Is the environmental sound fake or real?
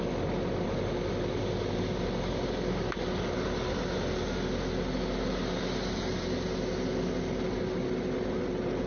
real